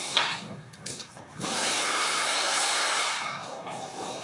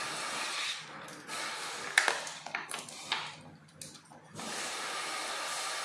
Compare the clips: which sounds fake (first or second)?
first